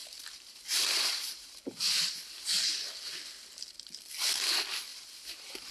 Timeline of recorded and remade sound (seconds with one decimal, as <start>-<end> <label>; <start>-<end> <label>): 0.0-2.6 remade; 2.6-4.9 recorded; 4.9-5.7 remade